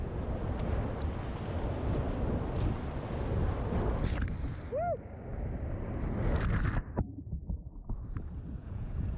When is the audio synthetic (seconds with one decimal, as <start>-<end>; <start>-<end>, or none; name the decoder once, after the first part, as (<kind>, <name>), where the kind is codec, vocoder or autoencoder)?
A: 8.6-9.2 (vocoder, Vocos)

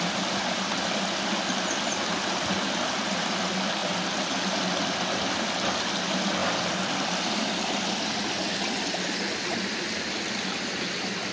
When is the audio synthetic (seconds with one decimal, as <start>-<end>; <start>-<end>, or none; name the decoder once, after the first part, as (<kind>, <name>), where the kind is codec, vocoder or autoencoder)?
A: none

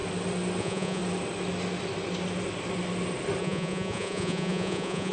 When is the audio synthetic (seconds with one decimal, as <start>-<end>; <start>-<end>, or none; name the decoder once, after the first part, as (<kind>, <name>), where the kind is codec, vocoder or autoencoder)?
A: 0.6-1.0 (vocoder, Vocos); 3.4-5.1

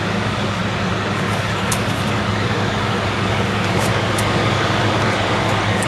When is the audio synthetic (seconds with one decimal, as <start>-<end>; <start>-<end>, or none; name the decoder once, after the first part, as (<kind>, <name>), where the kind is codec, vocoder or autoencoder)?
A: 0.0-0.6 (codec, DAC); 1.1-5.9

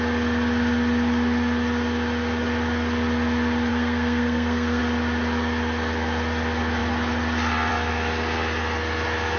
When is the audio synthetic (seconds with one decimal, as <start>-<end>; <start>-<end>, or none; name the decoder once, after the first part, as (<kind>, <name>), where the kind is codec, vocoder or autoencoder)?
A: 3.7-4.8 (codec, SNAC)

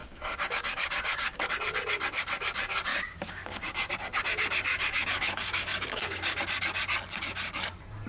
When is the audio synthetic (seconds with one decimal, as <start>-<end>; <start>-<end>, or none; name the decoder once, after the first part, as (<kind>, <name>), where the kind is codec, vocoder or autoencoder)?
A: 0.0-1.5 (codec, DAC); 2.9-3.9; 4.7-6.4

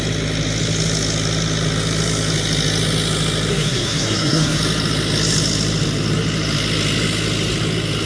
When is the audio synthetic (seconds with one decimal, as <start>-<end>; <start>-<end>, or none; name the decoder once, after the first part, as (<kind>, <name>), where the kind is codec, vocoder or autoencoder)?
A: 3.5-4.6 (codec, SNAC)

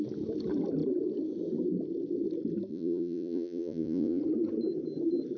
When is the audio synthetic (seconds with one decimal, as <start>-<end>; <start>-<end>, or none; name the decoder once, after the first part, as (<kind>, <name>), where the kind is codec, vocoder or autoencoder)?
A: 2.7-4.2 (vocoder, Vocos)